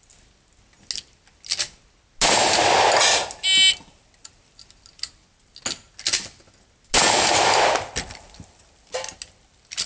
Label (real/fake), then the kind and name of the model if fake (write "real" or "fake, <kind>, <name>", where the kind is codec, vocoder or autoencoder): real